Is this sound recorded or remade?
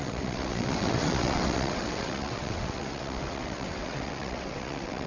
remade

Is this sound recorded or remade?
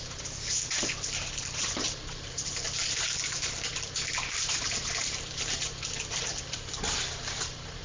remade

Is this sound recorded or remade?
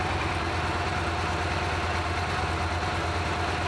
recorded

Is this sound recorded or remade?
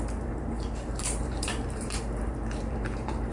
remade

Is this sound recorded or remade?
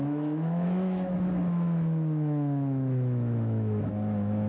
remade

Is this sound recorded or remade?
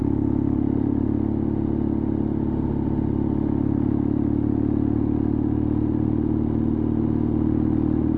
recorded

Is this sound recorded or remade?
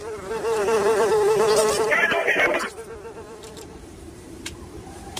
remade